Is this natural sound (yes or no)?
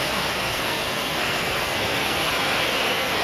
no